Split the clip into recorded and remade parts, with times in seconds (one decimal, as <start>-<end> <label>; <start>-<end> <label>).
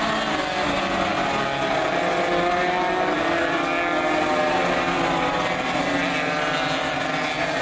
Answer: 0.0-7.6 recorded